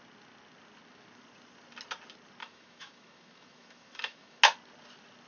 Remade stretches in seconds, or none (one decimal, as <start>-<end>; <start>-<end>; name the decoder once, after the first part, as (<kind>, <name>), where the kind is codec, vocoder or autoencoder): 2.4-4.4 (autoencoder, DAC-VAE)